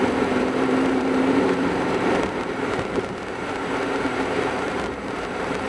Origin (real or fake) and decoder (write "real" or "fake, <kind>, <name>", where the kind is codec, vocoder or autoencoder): fake, vocoder, BigVGAN v2